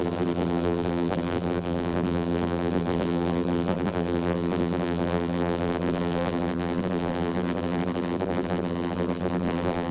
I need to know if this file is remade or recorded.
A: remade